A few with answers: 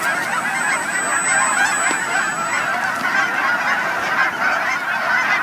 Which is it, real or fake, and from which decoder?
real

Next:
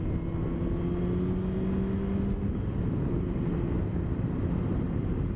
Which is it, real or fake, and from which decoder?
real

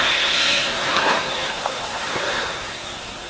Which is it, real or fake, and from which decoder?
fake, codec, SNAC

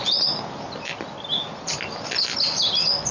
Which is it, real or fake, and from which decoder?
real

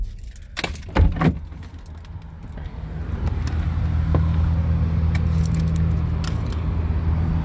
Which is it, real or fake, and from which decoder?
real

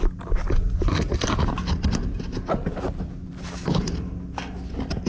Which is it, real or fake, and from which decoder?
real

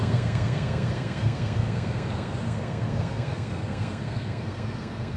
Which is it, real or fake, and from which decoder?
fake, codec, SNAC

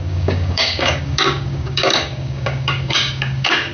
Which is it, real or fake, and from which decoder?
fake, codec, DAC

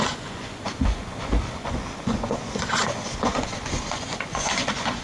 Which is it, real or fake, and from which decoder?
fake, vocoder, Vocos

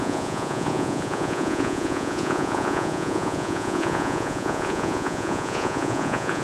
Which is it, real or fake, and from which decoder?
fake, vocoder, Vocos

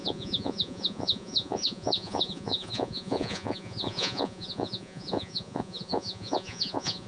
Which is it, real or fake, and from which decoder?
fake, vocoder, Vocos